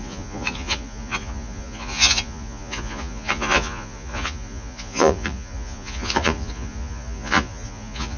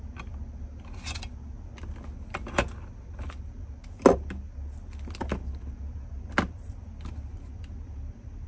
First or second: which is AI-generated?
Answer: first